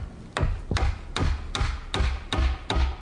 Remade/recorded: recorded